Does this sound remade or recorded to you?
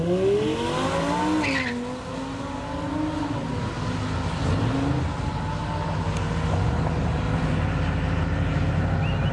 recorded